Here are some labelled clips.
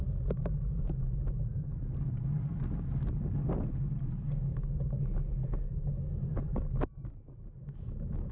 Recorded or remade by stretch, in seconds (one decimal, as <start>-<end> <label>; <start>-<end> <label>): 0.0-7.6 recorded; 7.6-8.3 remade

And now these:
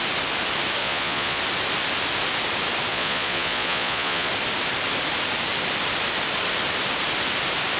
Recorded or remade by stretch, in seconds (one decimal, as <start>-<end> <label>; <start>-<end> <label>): 0.0-0.8 recorded; 0.8-1.4 remade; 1.4-2.9 recorded; 2.9-4.3 remade; 4.3-7.8 recorded

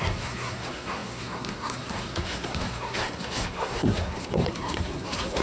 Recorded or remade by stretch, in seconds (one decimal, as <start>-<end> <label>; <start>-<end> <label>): 0.0-5.4 remade

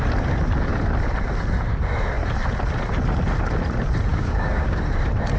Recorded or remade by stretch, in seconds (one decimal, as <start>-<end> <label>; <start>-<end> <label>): 0.0-4.1 recorded; 4.1-4.8 remade; 4.8-5.4 recorded

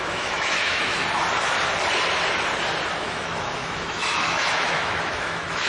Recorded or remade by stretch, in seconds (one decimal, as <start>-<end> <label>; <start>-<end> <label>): 0.0-1.0 remade; 1.0-3.0 recorded; 3.0-5.7 remade

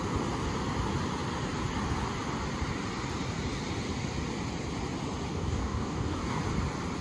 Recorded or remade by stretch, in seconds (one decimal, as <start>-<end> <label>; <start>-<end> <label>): 0.0-5.3 recorded; 5.3-6.4 remade; 6.4-7.0 recorded